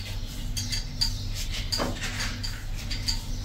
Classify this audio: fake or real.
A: real